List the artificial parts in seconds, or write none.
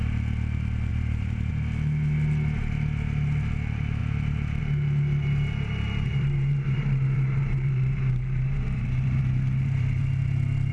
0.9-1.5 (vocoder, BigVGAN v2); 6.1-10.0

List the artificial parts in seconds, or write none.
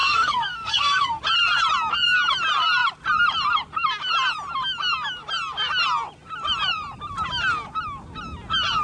0.0-1.2 (codec, SNAC)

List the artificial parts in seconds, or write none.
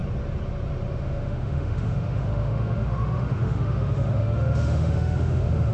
0.9-5.7 (autoencoder, DAC-VAE)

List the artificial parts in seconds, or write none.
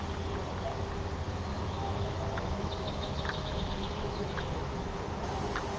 1.5-5.0 (autoencoder, DAC-VAE)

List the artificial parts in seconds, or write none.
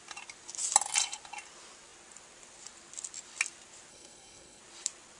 3.9-4.6 (codec, SNAC)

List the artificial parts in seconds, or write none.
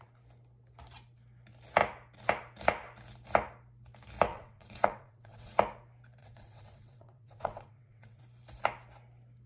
4.3-5.5 (vocoder, WaveNeXt); 6.2-8.2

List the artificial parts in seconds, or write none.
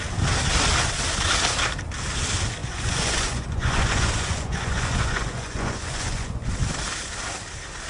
2.6-6.5 (vocoder, Vocos)